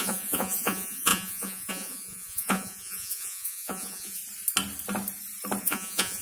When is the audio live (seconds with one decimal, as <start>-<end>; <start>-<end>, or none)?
4.2-5.6